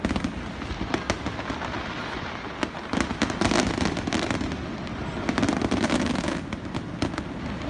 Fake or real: real